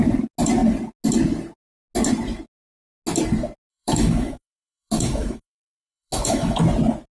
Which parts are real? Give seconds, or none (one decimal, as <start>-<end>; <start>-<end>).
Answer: 0.0-3.7; 6.6-7.1